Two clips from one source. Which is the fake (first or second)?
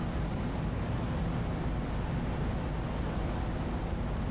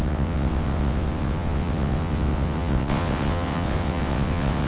second